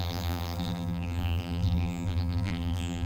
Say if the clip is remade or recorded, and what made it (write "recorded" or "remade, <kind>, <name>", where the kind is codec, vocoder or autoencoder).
remade, vocoder, BigVGAN v2